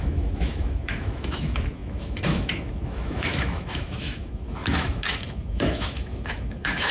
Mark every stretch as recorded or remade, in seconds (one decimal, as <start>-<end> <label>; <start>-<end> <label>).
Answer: 0.0-6.9 remade